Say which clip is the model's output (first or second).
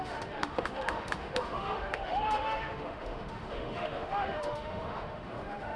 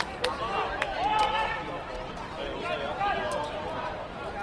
first